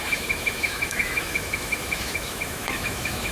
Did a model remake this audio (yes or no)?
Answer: yes